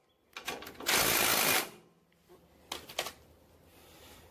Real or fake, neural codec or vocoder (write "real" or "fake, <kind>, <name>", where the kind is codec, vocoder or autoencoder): real